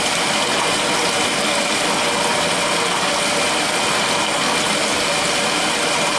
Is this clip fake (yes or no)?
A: no